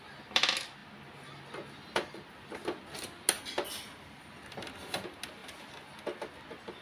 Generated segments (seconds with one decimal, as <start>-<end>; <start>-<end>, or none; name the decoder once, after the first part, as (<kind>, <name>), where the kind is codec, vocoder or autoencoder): none